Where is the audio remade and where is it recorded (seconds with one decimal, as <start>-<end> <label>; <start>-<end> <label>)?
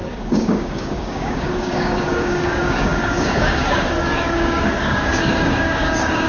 0.0-6.3 remade